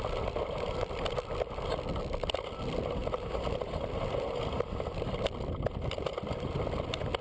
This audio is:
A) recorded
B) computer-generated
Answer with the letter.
A